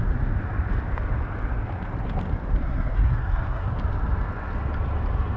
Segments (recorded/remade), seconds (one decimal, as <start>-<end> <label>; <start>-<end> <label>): 0.0-2.6 recorded; 2.6-3.8 remade; 3.8-5.4 recorded